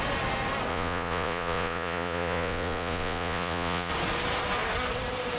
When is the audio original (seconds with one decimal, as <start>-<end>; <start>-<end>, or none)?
0.0-0.7; 3.9-5.4